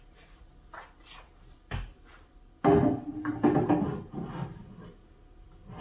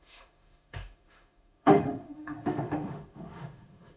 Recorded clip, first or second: first